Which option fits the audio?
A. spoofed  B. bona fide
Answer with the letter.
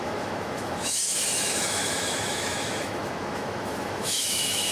A